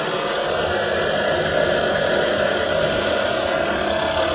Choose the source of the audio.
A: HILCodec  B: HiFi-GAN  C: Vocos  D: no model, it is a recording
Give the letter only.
D